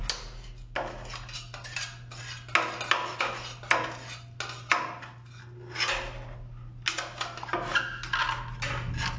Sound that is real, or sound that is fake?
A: real